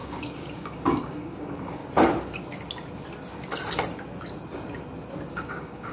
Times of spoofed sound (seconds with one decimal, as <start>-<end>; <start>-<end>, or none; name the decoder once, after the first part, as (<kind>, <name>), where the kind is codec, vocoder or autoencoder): 0.0-1.8 (codec, DAC); 5.3-5.9